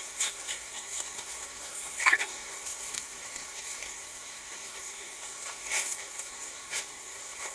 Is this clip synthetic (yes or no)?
yes